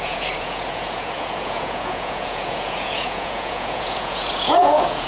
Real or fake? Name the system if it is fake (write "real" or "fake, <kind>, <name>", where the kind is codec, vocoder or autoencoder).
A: fake, vocoder, Vocos